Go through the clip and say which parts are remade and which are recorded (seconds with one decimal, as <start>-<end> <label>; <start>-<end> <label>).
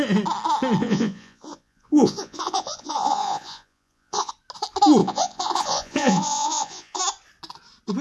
0.0-0.8 recorded; 0.8-4.3 remade; 4.3-5.0 recorded; 5.0-7.0 remade; 7.0-8.0 recorded